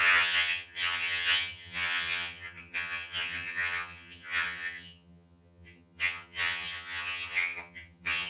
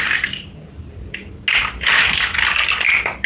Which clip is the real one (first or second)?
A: second